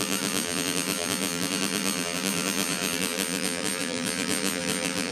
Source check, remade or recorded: remade